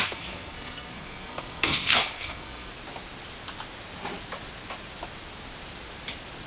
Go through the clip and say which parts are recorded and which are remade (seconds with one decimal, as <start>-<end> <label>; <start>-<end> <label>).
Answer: 0.0-2.7 remade; 2.7-6.5 recorded